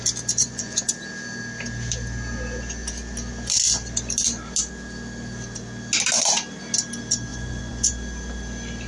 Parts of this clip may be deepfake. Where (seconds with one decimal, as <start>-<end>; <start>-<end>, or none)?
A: 0.4-0.9; 7.3-7.9